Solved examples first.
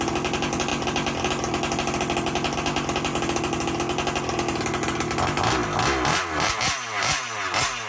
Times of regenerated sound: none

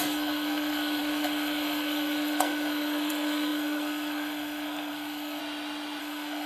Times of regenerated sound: 0.0-5.4 (codec, SNAC); 6.0-6.5